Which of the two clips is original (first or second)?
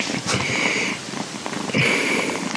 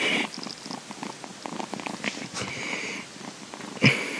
second